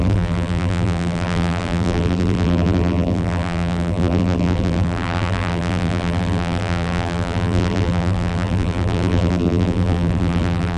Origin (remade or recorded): remade